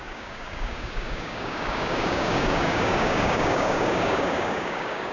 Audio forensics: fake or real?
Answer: fake